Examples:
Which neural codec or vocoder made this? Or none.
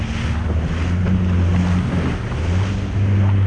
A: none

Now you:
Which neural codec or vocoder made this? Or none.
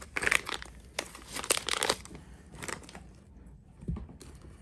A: none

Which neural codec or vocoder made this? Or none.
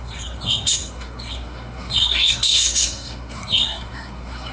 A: codec, SNAC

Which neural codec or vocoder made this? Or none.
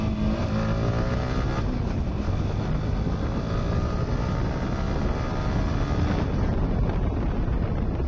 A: none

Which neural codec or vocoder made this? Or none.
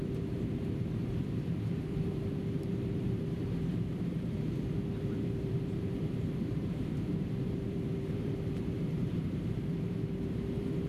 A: vocoder, BigVGAN v2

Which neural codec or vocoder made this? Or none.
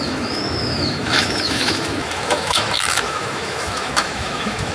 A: autoencoder, DAC-VAE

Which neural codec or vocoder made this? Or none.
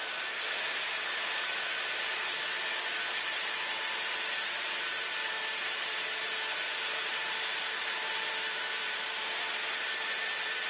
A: vocoder, BigVGAN v2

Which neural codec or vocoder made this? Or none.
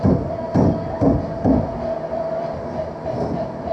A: none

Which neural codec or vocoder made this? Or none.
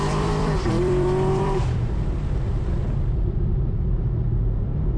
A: vocoder, BigVGAN v2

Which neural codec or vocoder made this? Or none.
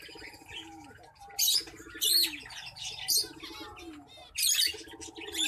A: none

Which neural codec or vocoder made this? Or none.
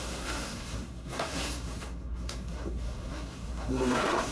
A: codec, SNAC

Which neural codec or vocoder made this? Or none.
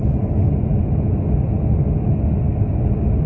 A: none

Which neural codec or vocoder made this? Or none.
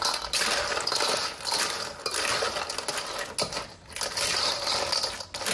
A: none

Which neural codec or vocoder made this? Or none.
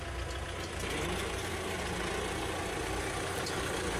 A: none